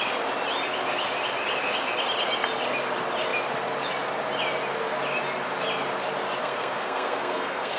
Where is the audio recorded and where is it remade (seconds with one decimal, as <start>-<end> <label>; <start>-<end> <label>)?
0.0-6.4 recorded; 6.4-7.8 remade